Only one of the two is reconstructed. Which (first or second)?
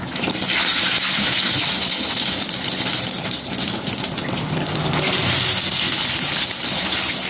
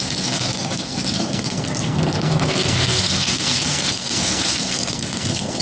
second